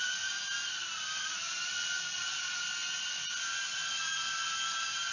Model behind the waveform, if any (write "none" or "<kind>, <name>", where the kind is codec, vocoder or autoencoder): none